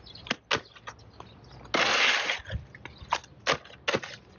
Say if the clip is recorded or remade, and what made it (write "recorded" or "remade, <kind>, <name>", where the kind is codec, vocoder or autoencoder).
recorded